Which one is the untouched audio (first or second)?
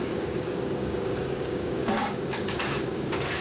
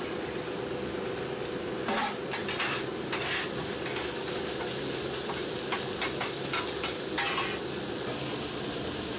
second